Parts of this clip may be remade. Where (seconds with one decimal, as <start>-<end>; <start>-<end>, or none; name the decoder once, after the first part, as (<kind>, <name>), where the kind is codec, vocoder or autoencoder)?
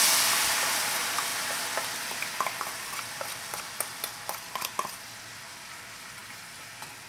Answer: none